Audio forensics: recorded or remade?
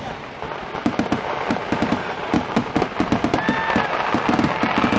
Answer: recorded